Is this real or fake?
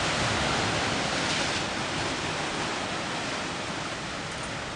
real